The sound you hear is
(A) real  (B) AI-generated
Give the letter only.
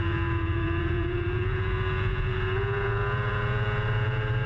B